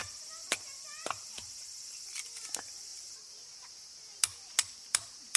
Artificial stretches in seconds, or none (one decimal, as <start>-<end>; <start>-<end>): 0.4-2.2